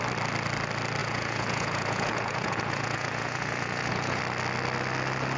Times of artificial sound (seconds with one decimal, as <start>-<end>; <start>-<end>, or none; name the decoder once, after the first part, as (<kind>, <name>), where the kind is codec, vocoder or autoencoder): 1.0-4.2 (vocoder, Vocos)